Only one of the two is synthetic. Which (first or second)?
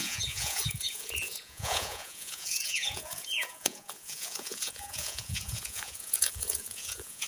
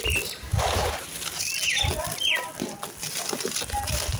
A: first